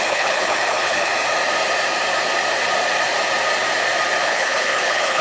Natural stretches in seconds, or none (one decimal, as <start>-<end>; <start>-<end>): 1.1-4.2